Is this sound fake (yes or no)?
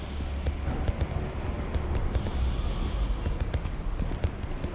no